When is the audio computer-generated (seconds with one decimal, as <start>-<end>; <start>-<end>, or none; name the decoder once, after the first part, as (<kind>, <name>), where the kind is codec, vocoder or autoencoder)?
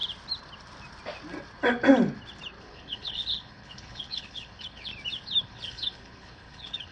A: 2.6-4.9 (codec, HILCodec); 5.4-6.9